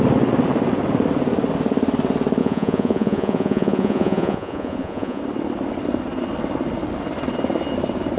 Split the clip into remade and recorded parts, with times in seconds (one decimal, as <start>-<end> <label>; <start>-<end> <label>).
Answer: 0.0-2.4 recorded; 2.4-5.2 remade; 5.2-8.2 recorded